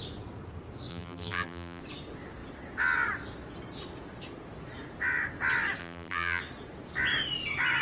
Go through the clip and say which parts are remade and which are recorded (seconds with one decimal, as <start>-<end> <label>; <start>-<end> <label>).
0.0-0.9 recorded; 0.9-1.8 remade; 1.8-5.8 recorded; 5.8-6.4 remade; 6.4-7.8 recorded